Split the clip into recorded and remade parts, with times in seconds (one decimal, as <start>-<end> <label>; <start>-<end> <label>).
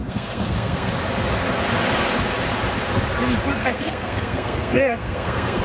0.0-0.9 remade; 0.9-3.6 recorded; 3.6-5.6 remade